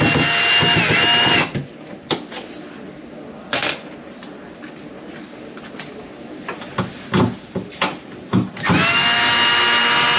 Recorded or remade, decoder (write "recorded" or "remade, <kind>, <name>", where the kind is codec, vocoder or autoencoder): recorded